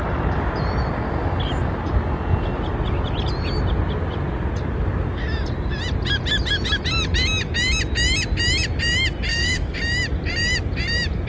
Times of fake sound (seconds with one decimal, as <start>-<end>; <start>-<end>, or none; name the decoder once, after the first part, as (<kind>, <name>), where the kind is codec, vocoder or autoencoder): 9.3-9.8 (codec, DAC)